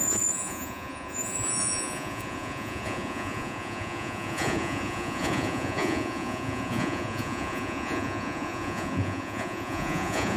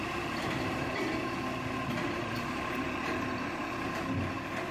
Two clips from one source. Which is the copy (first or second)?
first